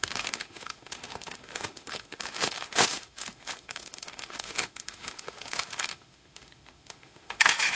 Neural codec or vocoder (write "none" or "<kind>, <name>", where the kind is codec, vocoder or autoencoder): autoencoder, DAC-VAE